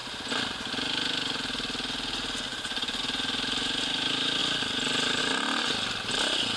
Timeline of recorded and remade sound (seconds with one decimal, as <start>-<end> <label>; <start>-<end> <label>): 0.0-2.5 recorded; 2.5-3.0 remade; 3.0-6.6 recorded